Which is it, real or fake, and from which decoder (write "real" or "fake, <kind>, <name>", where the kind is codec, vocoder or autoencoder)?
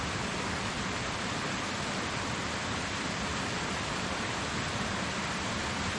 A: real